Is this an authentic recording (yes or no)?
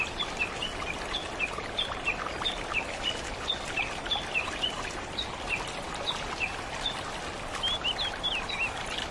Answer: yes